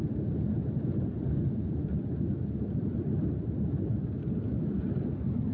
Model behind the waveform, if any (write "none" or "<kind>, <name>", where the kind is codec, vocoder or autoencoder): none